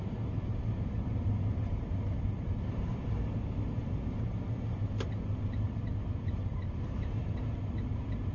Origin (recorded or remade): remade